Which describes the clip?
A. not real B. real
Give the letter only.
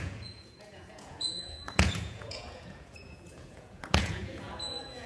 A